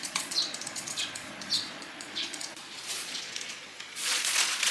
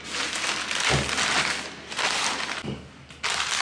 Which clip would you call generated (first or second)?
first